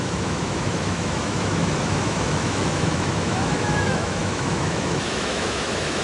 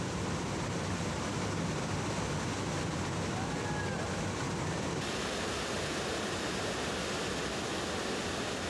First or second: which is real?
second